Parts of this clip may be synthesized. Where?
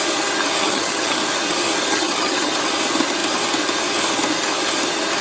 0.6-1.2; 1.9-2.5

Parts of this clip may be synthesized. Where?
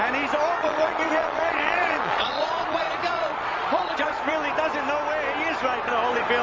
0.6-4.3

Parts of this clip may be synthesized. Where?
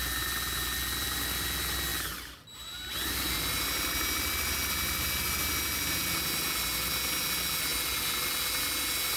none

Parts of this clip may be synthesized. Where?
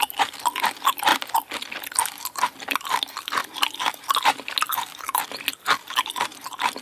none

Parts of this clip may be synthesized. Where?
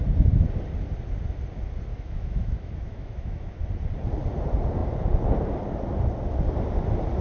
1.9-3.6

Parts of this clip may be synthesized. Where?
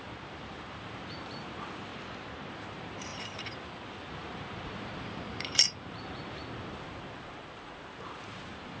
0.0-1.9; 2.5-8.8